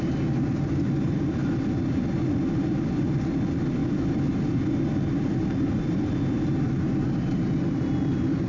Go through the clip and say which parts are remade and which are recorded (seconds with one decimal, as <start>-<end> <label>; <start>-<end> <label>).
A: 0.0-3.8 recorded; 3.8-6.0 remade; 6.0-8.5 recorded

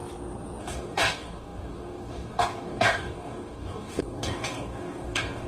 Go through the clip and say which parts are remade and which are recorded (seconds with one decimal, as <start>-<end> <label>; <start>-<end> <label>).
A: 0.0-0.6 recorded; 0.6-5.5 remade

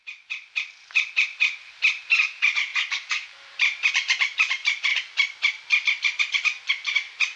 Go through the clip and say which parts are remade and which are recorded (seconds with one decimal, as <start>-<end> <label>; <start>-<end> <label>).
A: 0.0-4.9 remade; 4.9-6.2 recorded; 6.2-7.4 remade

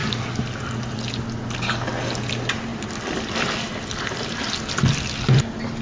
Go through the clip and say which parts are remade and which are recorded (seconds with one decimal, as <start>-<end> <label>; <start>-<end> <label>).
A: 0.0-1.1 remade; 1.1-2.7 recorded; 2.7-4.4 remade; 4.4-5.8 recorded

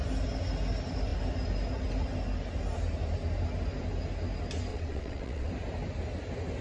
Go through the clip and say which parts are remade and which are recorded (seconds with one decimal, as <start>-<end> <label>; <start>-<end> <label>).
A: 0.0-4.7 recorded; 4.7-5.5 remade; 5.5-6.6 recorded

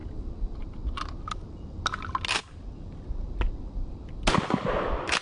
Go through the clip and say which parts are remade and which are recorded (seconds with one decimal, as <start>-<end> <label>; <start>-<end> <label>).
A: 0.0-5.2 recorded